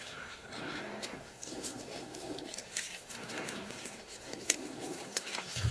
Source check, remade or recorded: remade